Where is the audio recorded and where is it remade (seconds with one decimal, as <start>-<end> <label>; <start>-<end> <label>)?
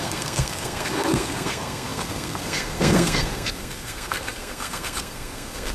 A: 0.0-5.7 remade